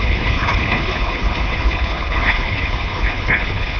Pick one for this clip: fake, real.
fake